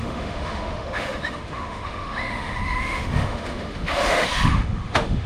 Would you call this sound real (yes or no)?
no